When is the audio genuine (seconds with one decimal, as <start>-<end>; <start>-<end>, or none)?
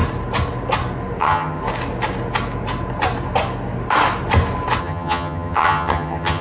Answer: 0.0-1.2; 1.6-4.8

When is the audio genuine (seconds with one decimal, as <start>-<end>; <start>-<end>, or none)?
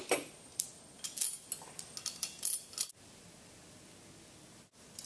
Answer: 0.0-5.1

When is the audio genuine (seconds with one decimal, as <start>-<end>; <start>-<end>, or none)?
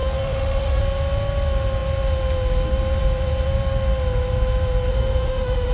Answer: 0.8-4.9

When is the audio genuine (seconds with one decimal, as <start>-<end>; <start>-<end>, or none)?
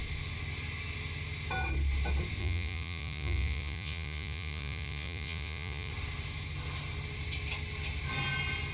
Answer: 0.0-2.4; 5.9-8.7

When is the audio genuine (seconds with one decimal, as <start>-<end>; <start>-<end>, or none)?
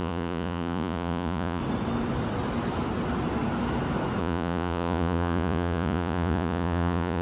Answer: 1.6-4.2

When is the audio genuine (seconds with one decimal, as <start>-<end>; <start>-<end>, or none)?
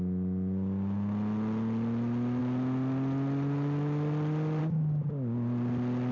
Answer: 0.0-6.1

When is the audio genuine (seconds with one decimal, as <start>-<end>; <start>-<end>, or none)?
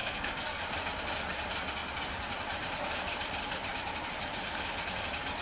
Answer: 0.6-5.4